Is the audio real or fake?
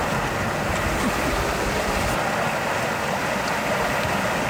real